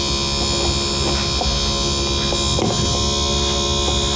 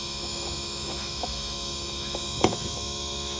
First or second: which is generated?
second